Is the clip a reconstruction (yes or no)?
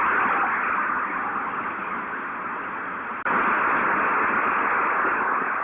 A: no